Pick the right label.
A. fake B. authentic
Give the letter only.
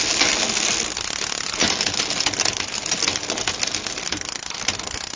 B